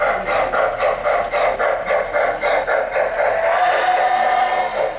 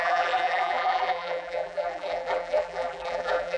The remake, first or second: second